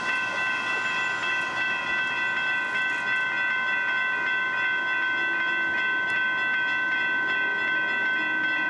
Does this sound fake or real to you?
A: real